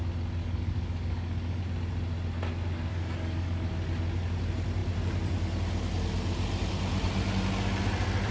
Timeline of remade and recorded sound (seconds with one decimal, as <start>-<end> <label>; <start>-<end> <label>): 0.0-0.4 recorded; 0.4-1.6 remade; 1.6-2.9 recorded; 2.9-3.7 remade; 3.7-8.3 recorded